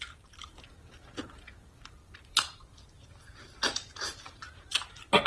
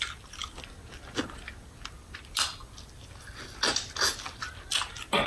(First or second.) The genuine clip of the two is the second